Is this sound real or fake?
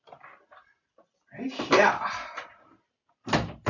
real